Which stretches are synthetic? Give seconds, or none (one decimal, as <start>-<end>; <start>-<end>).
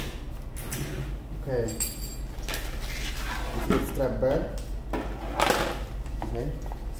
none